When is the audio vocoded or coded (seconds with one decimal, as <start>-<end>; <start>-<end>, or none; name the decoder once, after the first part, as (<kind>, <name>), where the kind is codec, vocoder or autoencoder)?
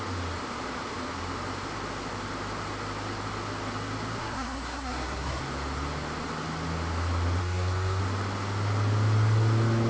4.2-5.4 (codec, SNAC); 7.4-8.0